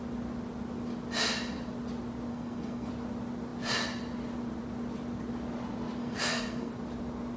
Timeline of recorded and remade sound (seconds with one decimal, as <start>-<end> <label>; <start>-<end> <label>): 0.0-2.3 recorded; 2.3-2.9 remade; 2.9-6.0 recorded; 6.0-6.7 remade; 6.7-7.4 recorded